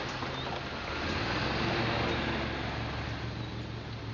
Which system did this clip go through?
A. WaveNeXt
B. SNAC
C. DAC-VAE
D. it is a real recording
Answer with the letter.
D